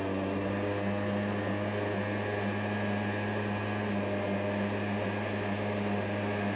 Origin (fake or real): real